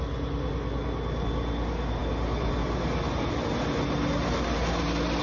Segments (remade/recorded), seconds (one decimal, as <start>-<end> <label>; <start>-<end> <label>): 0.0-5.2 recorded